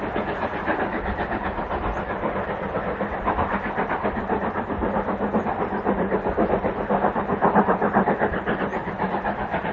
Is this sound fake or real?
real